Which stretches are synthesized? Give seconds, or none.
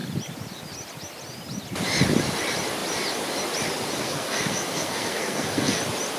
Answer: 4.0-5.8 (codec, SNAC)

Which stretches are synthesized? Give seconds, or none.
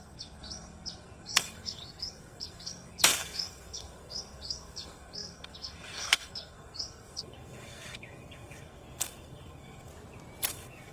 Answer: 0.0-9.9 (codec, SNAC); 10.5-10.9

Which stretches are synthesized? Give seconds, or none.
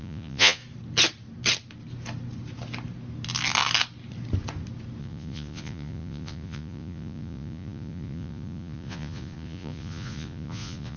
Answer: 0.0-0.6 (vocoder, Vocos); 5.0-11.0